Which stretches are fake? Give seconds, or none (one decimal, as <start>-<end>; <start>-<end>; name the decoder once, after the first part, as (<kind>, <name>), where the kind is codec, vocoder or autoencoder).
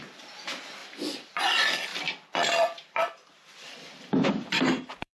0.8-1.4 (vocoder, BigVGAN v2); 1.9-5.2